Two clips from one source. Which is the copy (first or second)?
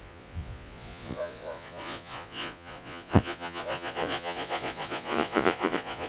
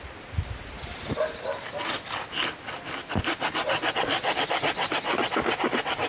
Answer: first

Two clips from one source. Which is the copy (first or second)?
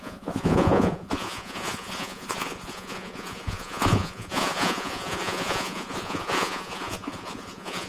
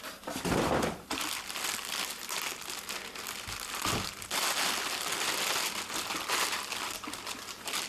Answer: first